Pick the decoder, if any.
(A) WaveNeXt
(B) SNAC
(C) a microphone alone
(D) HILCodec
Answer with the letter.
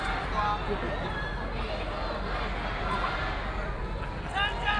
C